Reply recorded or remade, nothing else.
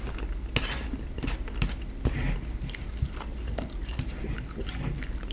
recorded